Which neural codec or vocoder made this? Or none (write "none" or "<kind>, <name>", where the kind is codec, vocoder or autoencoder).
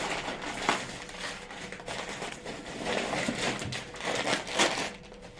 none